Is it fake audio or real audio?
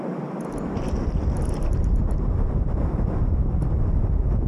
real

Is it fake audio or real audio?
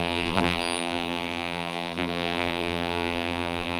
fake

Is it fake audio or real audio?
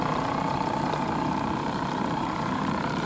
fake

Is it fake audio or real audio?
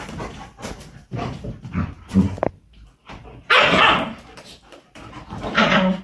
fake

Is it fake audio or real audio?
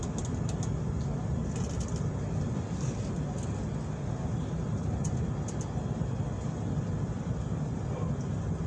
real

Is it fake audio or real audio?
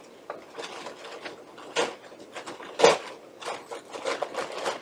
real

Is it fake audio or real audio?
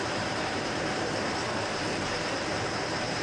fake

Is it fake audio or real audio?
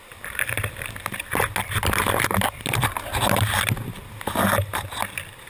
real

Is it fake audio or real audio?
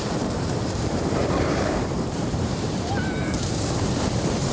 fake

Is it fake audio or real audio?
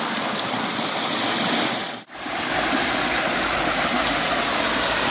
real